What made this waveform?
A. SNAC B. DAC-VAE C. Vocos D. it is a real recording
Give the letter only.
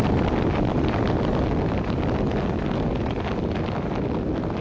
D